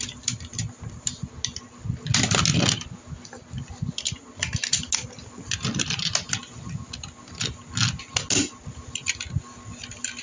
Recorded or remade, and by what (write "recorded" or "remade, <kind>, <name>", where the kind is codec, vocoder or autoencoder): recorded